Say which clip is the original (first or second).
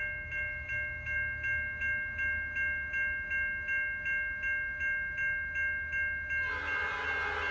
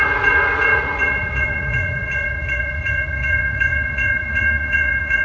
first